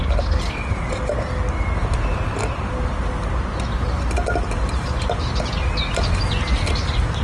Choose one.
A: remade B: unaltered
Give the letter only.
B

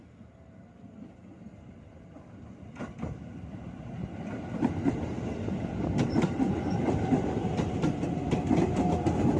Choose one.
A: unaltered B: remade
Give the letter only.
A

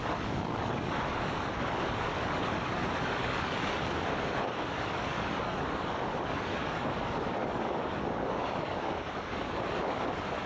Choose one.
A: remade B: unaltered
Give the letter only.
A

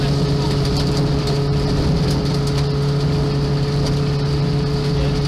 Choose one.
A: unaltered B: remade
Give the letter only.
A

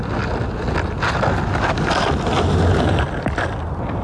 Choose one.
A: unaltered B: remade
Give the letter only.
A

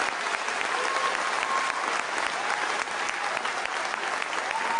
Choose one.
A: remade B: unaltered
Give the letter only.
B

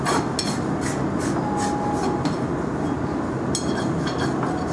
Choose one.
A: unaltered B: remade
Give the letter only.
A